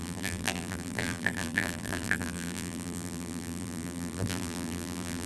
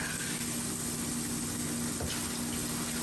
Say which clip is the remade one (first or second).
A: first